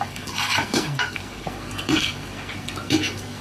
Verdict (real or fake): fake